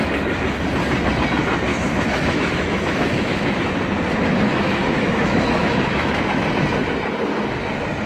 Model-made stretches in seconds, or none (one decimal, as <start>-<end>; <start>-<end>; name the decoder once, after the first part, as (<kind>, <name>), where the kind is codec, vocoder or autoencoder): 1.7-3.6 (autoencoder, DAC-VAE); 4.5-6.4